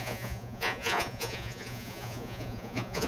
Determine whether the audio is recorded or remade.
remade